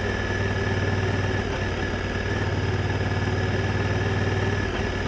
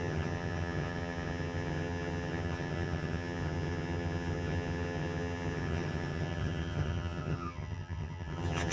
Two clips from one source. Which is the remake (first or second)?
second